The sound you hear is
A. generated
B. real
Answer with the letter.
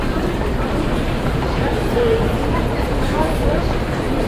A